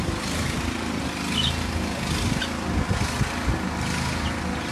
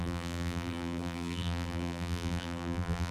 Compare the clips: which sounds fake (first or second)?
second